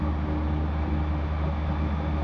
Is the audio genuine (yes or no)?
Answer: yes